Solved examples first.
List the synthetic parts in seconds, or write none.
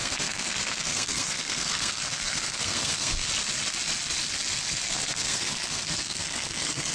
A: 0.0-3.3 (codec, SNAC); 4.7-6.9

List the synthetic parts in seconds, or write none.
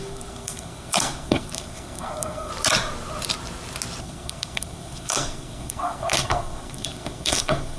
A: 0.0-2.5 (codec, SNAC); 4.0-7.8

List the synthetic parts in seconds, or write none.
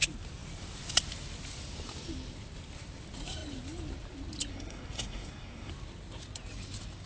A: 4.5-5.7 (codec, SNAC)